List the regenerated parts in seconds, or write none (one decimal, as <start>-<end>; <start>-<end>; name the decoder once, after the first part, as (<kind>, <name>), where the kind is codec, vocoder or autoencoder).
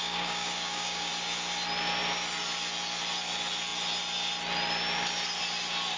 0.0-1.1 (codec, DAC)